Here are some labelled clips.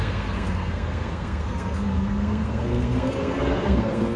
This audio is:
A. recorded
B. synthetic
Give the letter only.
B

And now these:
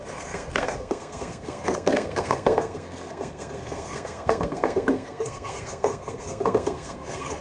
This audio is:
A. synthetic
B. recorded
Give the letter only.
A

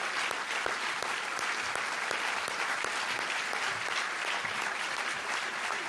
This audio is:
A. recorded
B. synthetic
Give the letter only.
A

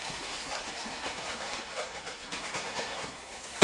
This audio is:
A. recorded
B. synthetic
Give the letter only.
B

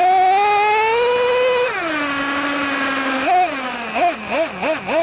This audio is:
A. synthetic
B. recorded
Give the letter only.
B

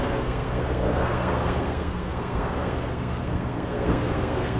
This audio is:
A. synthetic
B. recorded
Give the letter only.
A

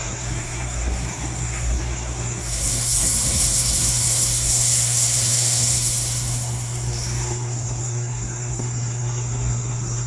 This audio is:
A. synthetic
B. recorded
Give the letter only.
A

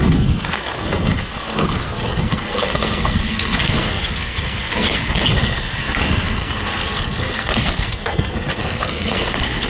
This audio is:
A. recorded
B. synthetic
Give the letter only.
B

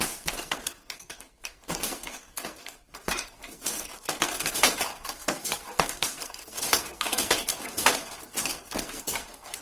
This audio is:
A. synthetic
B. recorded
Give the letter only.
A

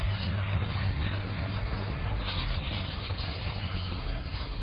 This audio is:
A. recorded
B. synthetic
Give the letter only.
B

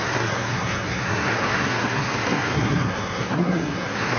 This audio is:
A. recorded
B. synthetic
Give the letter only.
B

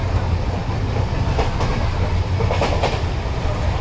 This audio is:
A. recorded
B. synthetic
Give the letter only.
A